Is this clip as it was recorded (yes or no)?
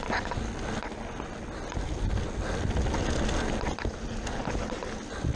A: yes